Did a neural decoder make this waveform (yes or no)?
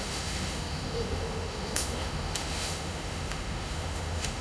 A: yes